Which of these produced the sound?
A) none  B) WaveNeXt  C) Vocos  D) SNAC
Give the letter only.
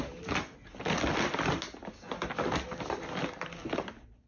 A